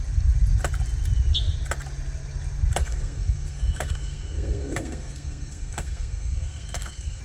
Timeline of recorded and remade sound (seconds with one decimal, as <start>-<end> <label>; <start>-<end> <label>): 0.0-2.8 recorded; 2.8-7.2 remade